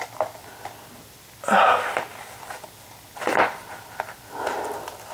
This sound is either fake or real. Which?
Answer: real